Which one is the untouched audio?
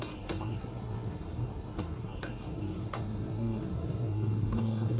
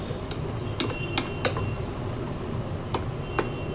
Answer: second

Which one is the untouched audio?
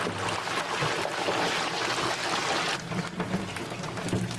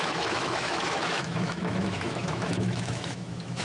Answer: first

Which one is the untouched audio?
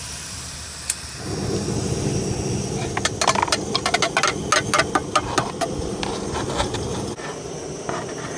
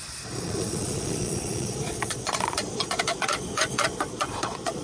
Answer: first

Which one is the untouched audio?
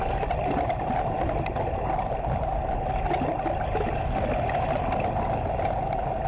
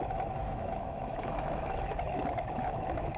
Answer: first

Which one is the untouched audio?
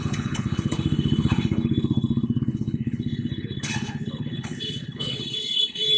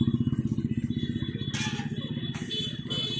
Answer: second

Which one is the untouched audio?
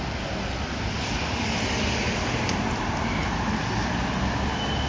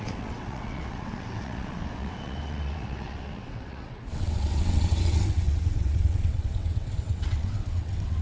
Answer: first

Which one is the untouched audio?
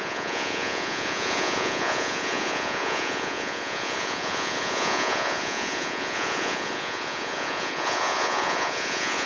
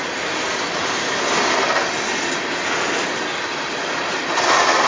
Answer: second